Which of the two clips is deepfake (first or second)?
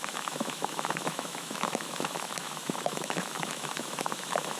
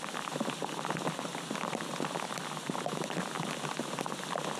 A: first